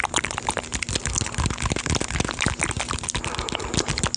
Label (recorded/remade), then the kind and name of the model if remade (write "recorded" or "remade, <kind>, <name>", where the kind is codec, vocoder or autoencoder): recorded